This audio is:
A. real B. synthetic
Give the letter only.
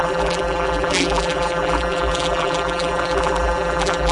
B